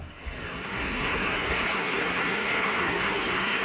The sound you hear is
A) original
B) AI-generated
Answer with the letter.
B